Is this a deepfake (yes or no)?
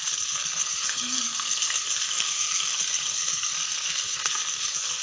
yes